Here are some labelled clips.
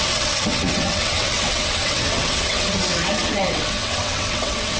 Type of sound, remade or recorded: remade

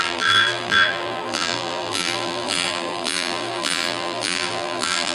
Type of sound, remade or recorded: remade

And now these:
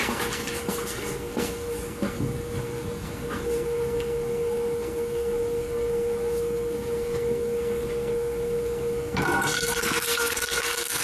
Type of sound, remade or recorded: remade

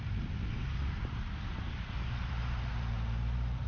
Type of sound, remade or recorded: remade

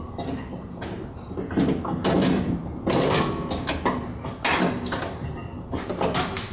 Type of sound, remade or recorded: recorded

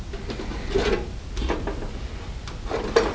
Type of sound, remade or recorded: recorded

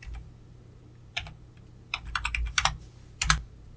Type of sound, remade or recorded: recorded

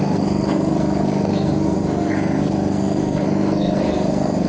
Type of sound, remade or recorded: remade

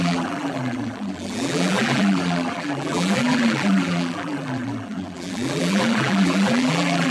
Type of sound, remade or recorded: remade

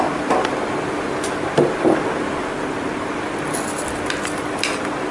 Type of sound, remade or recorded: recorded